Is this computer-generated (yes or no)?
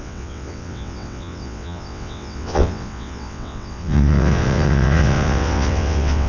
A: yes